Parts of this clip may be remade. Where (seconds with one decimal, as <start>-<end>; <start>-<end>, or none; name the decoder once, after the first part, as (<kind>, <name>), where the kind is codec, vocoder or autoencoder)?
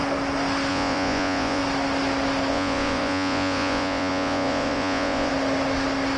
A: 0.7-1.6 (vocoder, Vocos); 2.5-5.3